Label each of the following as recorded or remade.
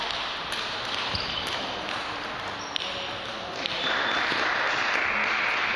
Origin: recorded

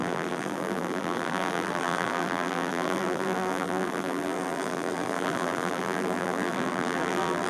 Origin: remade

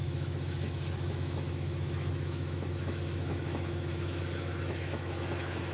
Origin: remade